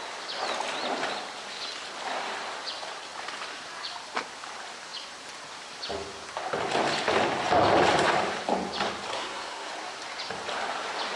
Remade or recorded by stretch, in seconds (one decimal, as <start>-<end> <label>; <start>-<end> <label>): 0.0-9.1 recorded; 9.1-9.7 remade; 9.7-11.2 recorded